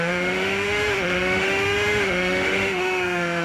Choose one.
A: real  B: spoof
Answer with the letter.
B